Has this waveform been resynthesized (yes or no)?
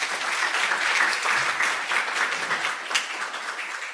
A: no